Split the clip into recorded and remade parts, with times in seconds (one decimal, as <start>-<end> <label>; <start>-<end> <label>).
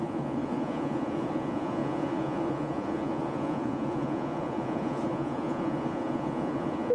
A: 0.0-6.9 remade